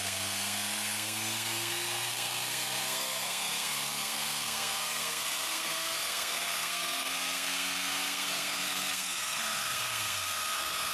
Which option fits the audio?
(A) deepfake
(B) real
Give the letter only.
A